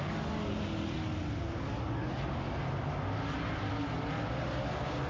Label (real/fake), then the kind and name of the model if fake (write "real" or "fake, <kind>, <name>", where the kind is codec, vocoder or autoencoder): real